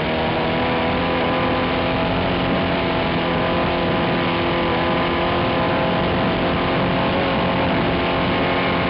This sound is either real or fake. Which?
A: real